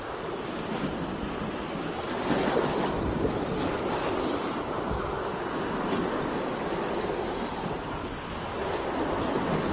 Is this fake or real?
real